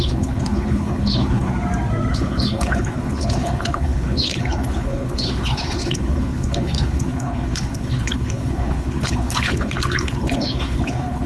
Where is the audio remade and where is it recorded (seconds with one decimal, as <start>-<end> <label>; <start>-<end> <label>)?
0.0-1.5 remade; 1.5-2.1 recorded; 2.1-11.3 remade